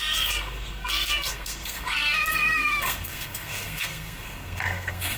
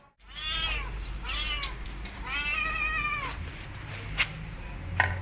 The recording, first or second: second